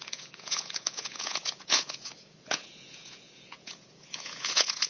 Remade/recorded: remade